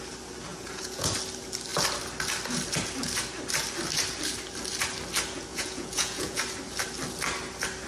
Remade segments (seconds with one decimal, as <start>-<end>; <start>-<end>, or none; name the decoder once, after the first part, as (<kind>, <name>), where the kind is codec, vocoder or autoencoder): 0.5-1.1 (vocoder, Vocos); 5.5-6.4